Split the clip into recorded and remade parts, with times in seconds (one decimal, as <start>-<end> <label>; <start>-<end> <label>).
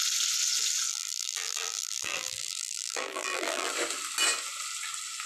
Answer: 0.0-0.9 recorded; 0.9-3.7 remade; 3.7-5.3 recorded